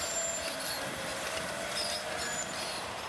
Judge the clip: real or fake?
real